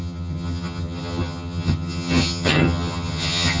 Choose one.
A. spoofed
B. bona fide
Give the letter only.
A